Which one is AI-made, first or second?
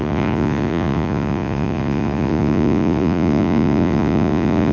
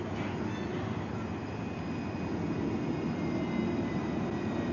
first